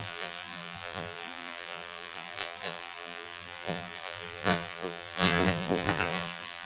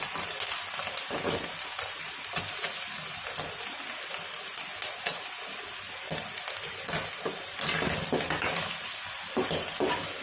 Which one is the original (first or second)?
second